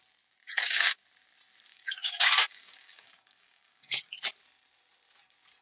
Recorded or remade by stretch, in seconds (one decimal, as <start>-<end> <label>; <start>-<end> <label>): 0.0-0.4 recorded; 0.4-1.0 remade; 1.0-1.7 recorded; 1.7-4.0 remade; 4.0-5.6 recorded